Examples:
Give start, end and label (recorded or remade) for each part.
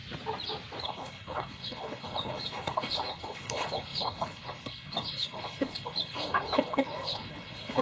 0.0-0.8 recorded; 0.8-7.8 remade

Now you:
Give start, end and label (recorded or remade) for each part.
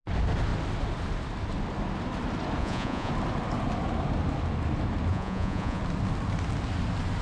0.0-2.6 recorded; 2.6-3.1 remade; 3.1-5.1 recorded; 5.1-5.8 remade; 5.8-7.2 recorded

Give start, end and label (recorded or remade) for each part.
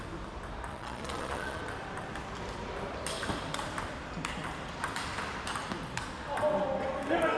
0.0-0.7 recorded; 0.7-1.6 remade; 1.6-7.4 recorded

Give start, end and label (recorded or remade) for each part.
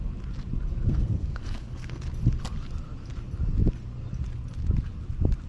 0.0-0.7 recorded; 0.7-2.0 remade; 2.0-5.5 recorded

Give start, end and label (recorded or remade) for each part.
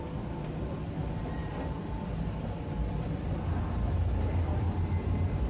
0.0-5.5 recorded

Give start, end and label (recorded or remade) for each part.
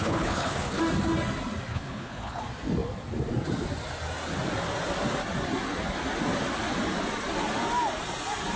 0.0-0.8 remade; 0.8-1.7 recorded; 1.7-2.4 remade; 2.4-8.6 recorded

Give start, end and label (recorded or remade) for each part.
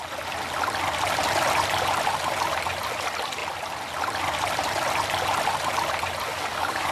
0.0-6.3 recorded; 6.3-6.9 remade